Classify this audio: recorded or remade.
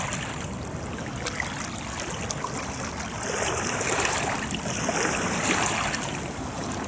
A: recorded